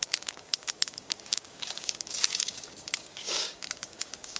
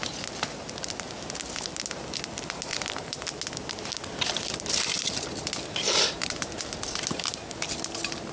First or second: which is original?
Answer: second